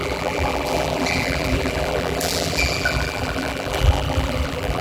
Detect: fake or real fake